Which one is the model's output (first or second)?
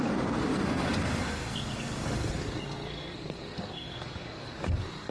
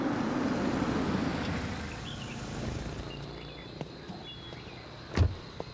first